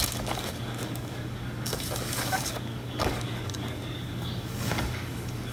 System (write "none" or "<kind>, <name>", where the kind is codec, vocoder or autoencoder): codec, DAC